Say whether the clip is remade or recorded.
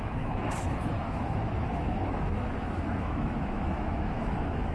remade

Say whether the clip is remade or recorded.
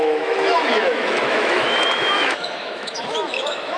remade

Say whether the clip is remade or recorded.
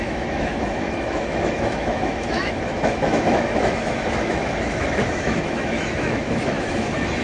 remade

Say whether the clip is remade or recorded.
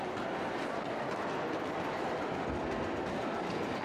recorded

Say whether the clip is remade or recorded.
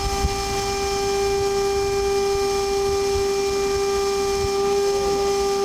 recorded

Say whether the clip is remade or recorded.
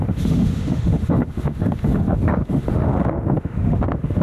remade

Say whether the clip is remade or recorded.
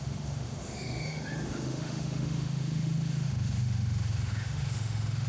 remade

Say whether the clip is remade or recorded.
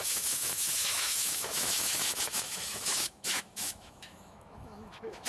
remade